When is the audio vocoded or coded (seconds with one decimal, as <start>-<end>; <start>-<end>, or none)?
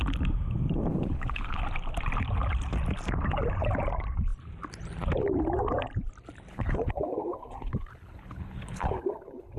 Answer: 0.9-1.6; 6.5-9.6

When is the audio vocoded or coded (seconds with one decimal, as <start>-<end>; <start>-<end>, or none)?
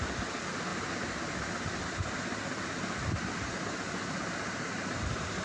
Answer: none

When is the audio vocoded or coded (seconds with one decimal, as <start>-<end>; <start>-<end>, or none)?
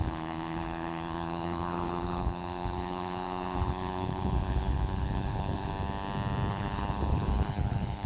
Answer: 0.0-5.7; 6.5-8.1